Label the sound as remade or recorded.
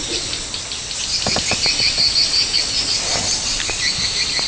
recorded